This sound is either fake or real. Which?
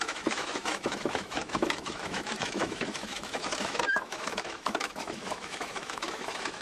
fake